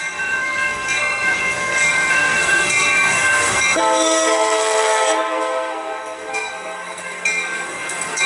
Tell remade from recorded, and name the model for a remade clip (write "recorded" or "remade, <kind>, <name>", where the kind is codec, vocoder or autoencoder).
remade, codec, SNAC